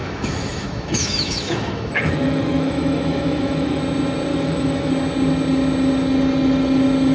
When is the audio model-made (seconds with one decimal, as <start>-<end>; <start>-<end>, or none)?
0.0-3.8; 4.3-4.9